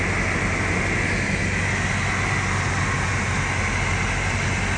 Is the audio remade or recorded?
recorded